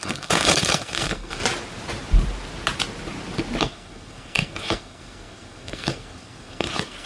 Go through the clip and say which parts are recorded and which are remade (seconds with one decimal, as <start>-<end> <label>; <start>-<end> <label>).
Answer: 0.0-1.4 remade; 1.4-3.6 recorded; 3.6-7.1 remade